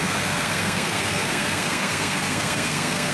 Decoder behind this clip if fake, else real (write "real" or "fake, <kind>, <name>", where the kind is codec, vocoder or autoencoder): fake, codec, SNAC